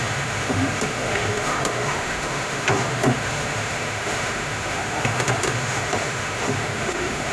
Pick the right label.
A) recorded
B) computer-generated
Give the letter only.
B